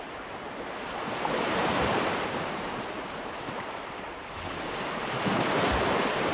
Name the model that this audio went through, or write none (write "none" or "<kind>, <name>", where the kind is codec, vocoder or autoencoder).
none